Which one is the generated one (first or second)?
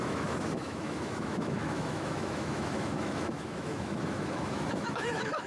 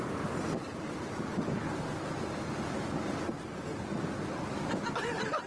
first